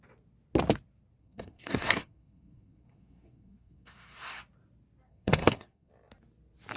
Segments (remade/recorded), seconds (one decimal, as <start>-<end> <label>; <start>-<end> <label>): 0.0-1.2 recorded; 1.2-4.4 remade; 4.4-5.1 recorded; 5.1-5.9 remade; 5.9-6.8 recorded